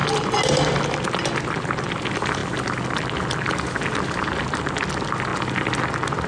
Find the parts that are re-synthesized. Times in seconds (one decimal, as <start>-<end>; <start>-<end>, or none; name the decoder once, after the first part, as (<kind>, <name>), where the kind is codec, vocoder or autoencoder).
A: none